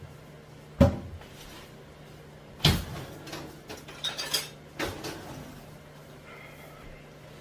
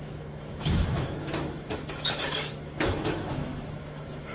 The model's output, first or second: second